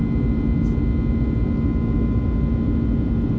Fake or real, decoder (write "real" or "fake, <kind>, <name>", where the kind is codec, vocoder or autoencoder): real